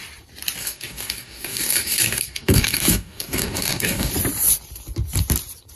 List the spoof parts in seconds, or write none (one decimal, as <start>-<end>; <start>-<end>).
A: 0.6-4.1